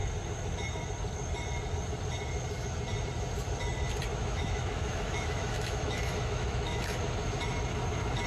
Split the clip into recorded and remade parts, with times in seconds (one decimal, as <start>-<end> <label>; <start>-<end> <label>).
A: 0.0-4.1 recorded; 4.1-7.0 remade; 7.0-8.3 recorded